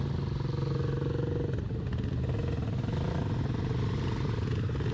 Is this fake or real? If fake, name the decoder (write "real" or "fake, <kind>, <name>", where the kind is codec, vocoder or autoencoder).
real